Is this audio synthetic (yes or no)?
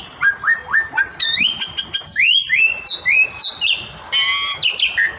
no